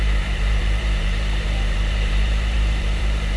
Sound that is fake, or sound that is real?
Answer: fake